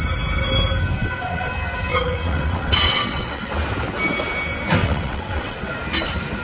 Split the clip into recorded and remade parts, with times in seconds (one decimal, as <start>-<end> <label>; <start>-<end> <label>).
0.0-1.0 recorded; 1.0-1.5 remade; 1.5-1.9 recorded; 1.9-3.5 remade; 3.5-4.8 recorded; 4.8-5.7 remade; 5.7-6.4 recorded